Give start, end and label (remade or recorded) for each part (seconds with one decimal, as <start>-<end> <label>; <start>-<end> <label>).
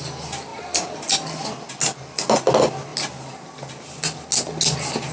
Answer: 0.0-5.1 recorded